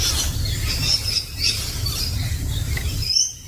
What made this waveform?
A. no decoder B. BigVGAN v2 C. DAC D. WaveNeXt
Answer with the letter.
A